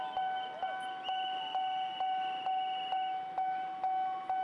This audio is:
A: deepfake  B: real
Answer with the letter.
B